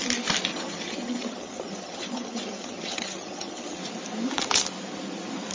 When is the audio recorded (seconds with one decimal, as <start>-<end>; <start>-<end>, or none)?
0.0-0.5; 3.8-5.5